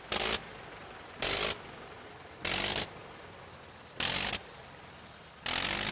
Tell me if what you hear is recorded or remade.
recorded